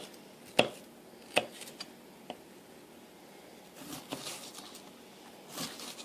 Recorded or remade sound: recorded